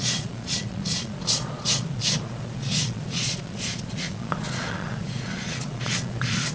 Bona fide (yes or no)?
no